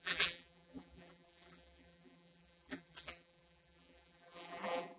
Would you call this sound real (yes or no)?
no